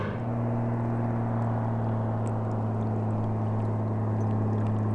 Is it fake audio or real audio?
real